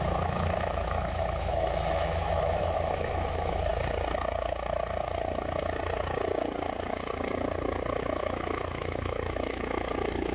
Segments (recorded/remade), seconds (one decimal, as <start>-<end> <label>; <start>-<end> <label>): 0.0-3.7 remade; 3.7-8.0 recorded; 8.0-10.3 remade